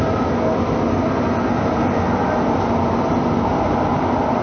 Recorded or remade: recorded